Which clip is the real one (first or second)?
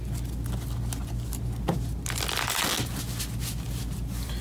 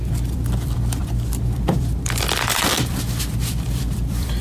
first